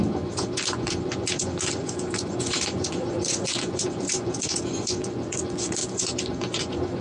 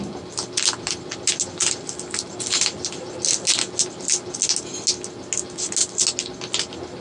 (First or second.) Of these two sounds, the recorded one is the second